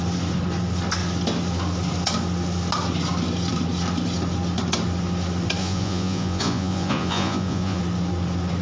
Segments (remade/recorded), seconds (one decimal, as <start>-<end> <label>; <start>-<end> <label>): 0.0-5.6 recorded; 5.6-7.8 remade; 7.8-8.6 recorded